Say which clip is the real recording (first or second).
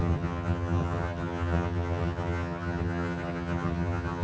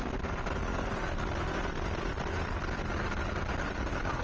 second